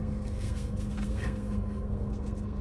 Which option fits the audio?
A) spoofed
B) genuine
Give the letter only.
A